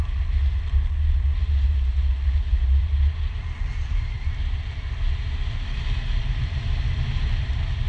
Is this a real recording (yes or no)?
yes